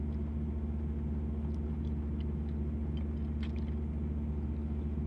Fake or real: real